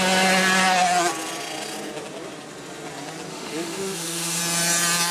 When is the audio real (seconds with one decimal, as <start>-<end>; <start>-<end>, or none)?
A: 0.0-3.3; 4.4-5.1